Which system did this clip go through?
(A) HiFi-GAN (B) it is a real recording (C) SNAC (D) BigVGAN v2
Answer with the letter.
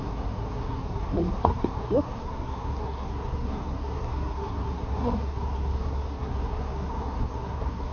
C